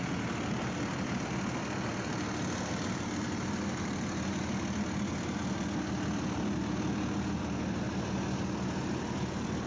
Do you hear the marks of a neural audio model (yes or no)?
no